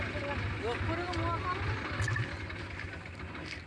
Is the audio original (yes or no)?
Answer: yes